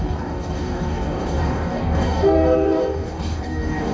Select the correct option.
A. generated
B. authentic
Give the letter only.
A